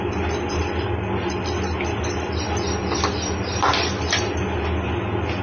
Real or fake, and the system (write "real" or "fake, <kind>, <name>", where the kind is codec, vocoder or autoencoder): real